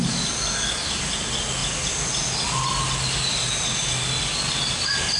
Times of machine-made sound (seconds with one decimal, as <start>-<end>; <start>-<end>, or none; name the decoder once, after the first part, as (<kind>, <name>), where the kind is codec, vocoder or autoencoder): none